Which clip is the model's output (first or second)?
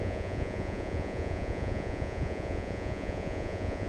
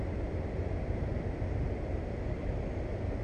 first